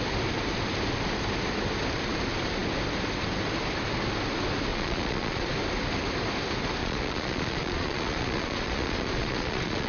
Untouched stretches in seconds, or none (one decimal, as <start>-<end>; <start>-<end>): 0.0-4.7; 5.5-6.8